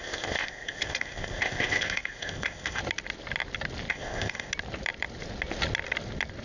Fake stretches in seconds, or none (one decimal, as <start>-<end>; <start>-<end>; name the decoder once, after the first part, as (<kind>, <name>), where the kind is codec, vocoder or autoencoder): 0.0-2.8 (codec, ZipCodec); 3.9-4.5